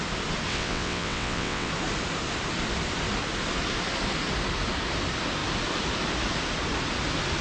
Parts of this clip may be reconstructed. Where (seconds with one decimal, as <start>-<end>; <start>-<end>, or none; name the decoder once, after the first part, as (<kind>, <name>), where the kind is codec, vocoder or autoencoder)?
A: 0.5-1.7 (vocoder, WaveNeXt)